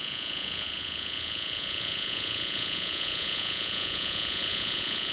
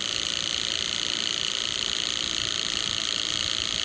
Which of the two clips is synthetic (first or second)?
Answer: first